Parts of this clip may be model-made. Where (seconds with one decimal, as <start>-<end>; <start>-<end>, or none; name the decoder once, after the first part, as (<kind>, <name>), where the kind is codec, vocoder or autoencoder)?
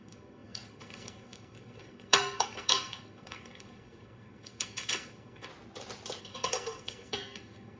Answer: 0.0-5.5 (codec, SNAC); 6.2-7.8